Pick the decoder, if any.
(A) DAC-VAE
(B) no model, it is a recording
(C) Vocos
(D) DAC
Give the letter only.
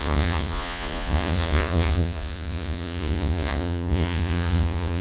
C